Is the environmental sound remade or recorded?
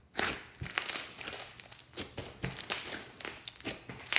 recorded